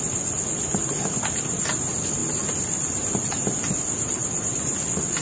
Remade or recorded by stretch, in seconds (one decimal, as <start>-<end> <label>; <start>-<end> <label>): 0.0-5.2 recorded